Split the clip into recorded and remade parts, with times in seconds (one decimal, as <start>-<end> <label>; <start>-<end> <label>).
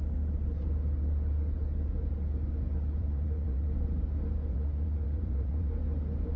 0.0-3.0 recorded; 3.0-3.7 remade; 3.7-4.5 recorded; 4.5-5.7 remade; 5.7-6.4 recorded